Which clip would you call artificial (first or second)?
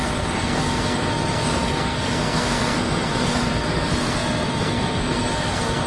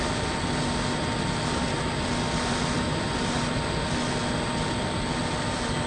first